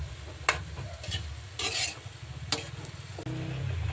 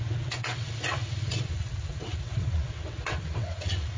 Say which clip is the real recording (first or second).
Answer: first